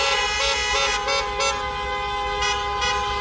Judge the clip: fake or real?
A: real